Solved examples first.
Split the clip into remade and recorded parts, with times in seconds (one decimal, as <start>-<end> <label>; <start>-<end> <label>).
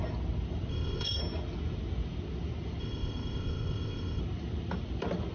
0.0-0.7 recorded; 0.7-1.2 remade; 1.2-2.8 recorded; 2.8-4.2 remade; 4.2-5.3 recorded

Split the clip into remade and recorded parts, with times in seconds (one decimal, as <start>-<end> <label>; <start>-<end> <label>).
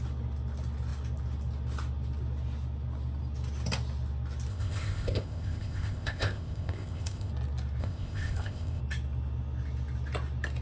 0.0-4.5 recorded; 4.5-7.3 remade; 7.3-7.8 recorded; 7.8-8.8 remade; 8.8-10.6 recorded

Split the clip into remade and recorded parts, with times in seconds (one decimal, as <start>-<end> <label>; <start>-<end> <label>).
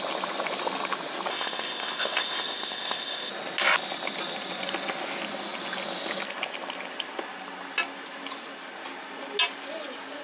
0.0-1.3 recorded; 1.3-3.3 remade; 3.3-10.2 recorded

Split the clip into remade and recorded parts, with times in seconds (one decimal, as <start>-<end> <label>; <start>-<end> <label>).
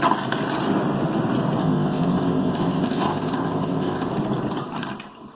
0.0-1.6 recorded; 1.6-4.1 remade; 4.1-5.4 recorded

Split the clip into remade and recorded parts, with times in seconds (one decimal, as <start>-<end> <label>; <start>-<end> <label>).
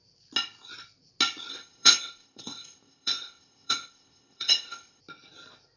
0.0-1.5 recorded; 1.5-5.0 remade; 5.0-5.8 recorded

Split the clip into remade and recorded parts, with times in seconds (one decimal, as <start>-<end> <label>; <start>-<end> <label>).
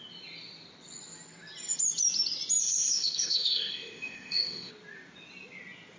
0.0-2.6 recorded; 2.6-4.7 remade; 4.7-6.0 recorded